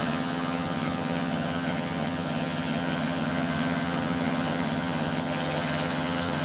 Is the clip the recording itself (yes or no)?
no